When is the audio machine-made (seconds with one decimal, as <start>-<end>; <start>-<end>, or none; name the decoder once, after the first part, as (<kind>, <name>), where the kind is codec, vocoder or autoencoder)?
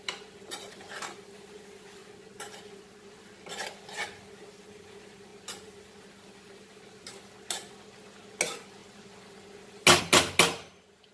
none